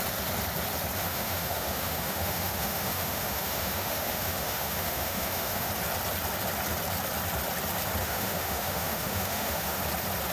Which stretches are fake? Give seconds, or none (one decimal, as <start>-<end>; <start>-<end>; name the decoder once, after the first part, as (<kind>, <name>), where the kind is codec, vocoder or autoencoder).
1.0-5.7 (autoencoder, DAC-VAE); 8.0-9.8